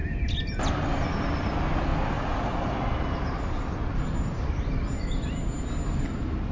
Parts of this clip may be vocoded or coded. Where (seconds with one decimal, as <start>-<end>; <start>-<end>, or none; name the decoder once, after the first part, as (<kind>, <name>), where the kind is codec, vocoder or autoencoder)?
none

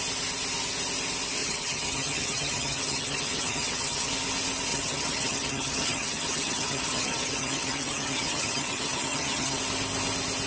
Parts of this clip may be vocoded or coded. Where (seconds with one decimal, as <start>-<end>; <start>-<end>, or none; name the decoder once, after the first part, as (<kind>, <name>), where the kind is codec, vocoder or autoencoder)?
1.4-4.1 (vocoder, HiFi-GAN); 4.7-9.6

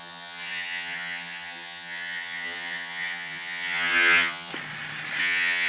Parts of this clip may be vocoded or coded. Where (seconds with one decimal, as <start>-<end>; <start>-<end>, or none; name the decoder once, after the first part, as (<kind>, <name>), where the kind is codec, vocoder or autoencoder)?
0.0-4.5 (vocoder, HiFi-GAN); 5.2-5.7

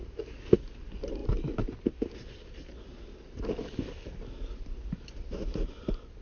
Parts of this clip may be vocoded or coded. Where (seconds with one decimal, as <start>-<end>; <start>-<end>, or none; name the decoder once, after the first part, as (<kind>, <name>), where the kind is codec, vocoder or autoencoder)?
none

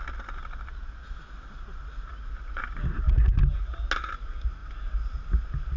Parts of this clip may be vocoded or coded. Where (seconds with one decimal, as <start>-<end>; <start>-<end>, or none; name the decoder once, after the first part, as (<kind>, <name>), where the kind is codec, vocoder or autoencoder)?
none

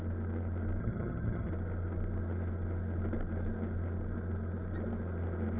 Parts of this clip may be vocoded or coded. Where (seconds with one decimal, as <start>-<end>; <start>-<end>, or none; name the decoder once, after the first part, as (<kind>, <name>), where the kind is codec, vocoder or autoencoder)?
0.8-1.5 (vocoder, HiFi-GAN)